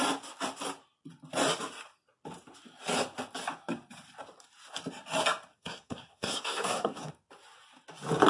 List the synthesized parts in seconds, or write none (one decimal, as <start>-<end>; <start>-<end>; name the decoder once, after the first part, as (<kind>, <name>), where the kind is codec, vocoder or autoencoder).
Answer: 5.5-7.1 (codec, SNAC)